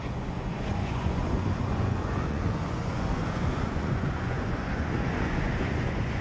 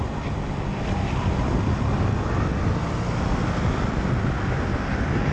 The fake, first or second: first